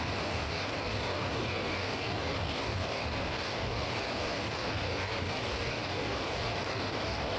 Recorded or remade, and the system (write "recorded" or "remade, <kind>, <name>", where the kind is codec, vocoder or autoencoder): remade, codec, DAC